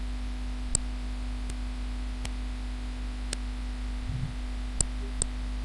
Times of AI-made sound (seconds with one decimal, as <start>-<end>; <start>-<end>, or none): none

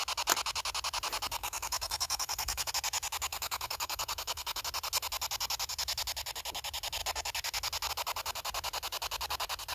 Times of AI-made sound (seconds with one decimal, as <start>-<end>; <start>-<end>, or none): 1.4-2.7; 3.3-4.6

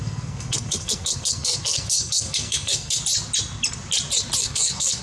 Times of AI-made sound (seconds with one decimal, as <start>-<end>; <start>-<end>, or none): 0.0-3.0; 4.4-5.0

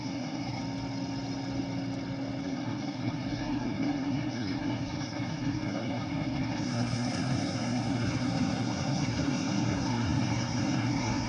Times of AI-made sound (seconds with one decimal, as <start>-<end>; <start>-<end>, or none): 0.0-0.6; 2.4-11.3